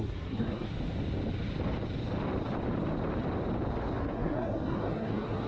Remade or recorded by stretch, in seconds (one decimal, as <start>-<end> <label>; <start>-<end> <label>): 0.0-0.7 remade; 0.7-4.0 recorded; 4.0-5.5 remade